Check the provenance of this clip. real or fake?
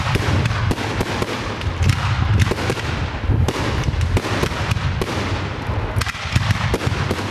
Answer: real